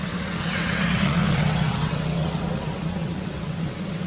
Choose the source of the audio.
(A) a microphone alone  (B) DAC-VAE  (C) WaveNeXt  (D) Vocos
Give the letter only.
C